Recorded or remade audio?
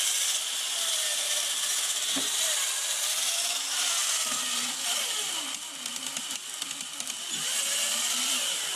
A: remade